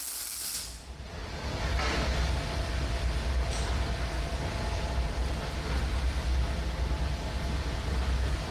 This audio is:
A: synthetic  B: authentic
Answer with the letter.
B